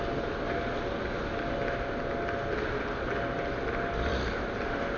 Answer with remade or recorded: recorded